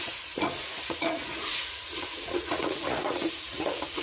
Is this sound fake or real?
fake